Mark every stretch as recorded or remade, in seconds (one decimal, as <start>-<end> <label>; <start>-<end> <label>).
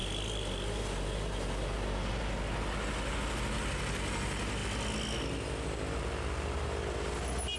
0.0-7.6 recorded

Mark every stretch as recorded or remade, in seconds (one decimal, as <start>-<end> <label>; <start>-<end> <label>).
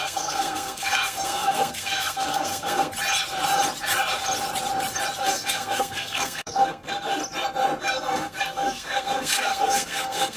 0.0-2.9 remade; 2.9-5.2 recorded; 5.2-7.2 remade; 7.2-7.8 recorded; 7.8-10.4 remade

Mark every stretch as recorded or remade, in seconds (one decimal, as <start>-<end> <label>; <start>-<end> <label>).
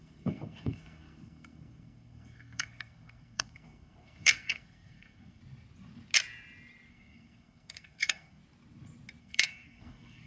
0.0-5.4 remade; 5.4-6.9 recorded; 6.9-8.4 remade; 8.4-9.2 recorded; 9.2-10.3 remade